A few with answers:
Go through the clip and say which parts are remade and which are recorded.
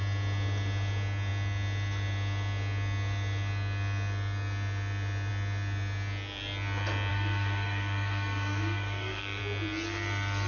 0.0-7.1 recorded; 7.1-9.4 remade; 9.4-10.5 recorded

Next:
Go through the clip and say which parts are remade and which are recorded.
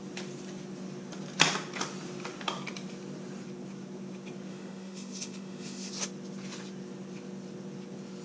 0.0-4.5 recorded; 4.5-5.9 remade; 5.9-8.2 recorded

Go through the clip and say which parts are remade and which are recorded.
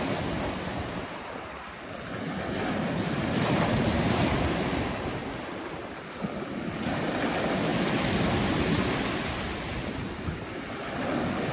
0.0-3.9 recorded; 3.9-5.2 remade; 5.2-10.0 recorded; 10.0-10.7 remade; 10.7-11.5 recorded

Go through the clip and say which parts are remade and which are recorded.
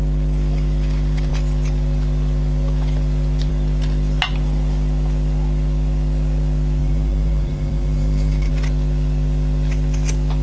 0.0-6.8 recorded; 6.8-8.5 remade; 8.5-10.4 recorded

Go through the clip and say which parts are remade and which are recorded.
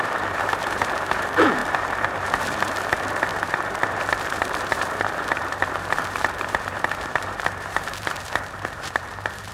0.0-9.5 remade